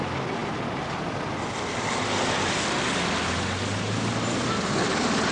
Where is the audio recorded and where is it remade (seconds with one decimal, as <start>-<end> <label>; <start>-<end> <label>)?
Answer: 0.0-5.3 recorded